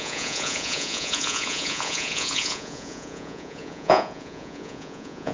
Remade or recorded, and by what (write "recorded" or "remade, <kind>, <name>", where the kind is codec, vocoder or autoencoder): remade, vocoder, Vocos